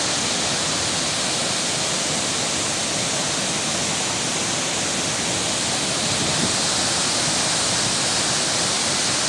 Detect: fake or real real